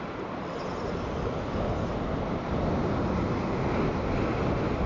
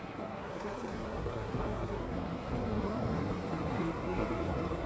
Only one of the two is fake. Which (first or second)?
second